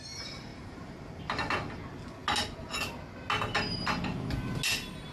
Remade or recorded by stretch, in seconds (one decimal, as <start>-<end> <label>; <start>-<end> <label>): 0.0-0.5 recorded; 0.5-1.2 remade; 1.2-5.1 recorded